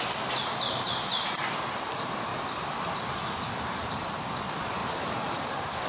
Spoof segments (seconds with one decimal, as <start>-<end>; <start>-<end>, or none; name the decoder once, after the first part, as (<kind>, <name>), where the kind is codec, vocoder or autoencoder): 2.3-4.1 (vocoder, BigVGAN v2); 4.8-5.4